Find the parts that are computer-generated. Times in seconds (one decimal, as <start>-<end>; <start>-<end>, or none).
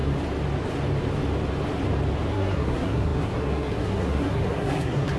2.3-5.2